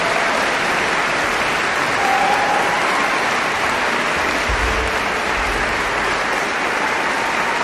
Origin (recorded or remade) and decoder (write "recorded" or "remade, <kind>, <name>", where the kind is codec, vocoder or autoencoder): recorded